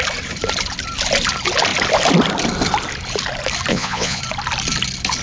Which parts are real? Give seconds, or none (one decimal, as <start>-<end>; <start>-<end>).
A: 0.0-3.7; 4.2-5.2